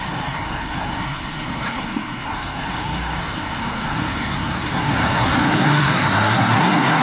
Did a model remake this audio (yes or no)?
yes